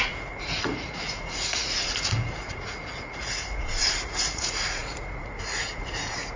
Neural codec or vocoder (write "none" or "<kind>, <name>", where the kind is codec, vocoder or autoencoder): vocoder, Vocos